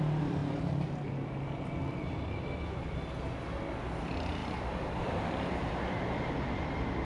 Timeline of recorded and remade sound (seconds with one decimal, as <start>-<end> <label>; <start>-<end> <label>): 0.0-0.4 remade; 0.4-4.0 recorded; 4.0-7.0 remade